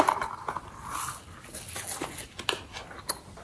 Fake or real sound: real